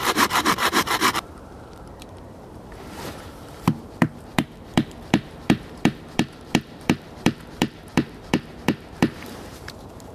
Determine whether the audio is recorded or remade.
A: remade